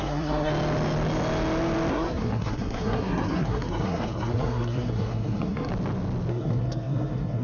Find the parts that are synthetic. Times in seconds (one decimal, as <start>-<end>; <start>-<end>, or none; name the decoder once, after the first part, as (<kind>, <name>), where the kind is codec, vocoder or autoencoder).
0.0-0.5 (codec, SNAC); 1.9-5.7; 6.3-7.4